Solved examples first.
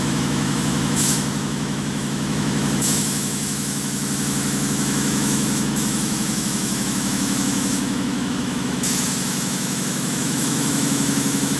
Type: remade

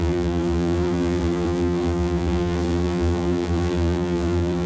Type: remade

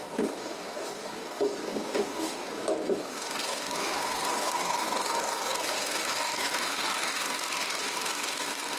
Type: remade